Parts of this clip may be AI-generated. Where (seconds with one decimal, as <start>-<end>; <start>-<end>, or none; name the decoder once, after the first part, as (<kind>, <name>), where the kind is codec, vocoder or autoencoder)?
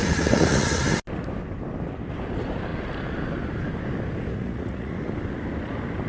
0.0-0.8 (vocoder, Vocos); 4.3-5.1